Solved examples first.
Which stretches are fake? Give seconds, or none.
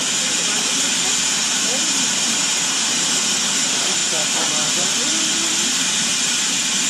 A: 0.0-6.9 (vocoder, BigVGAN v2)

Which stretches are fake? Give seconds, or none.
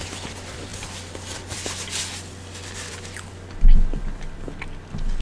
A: 0.7-3.6 (vocoder, BigVGAN v2)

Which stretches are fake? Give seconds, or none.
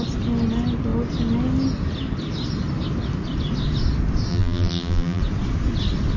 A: 4.3-5.2 (vocoder, BigVGAN v2)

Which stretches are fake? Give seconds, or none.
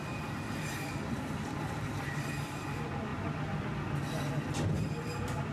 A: 0.0-3.1 (vocoder, BigVGAN v2); 4.7-5.5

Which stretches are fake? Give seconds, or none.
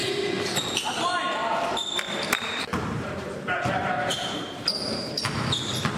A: 1.8-5.2 (vocoder, BigVGAN v2)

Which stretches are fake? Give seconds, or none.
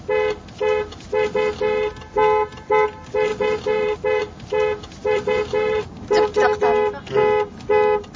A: 3.3-4.2 (vocoder, BigVGAN v2); 5.0-6.6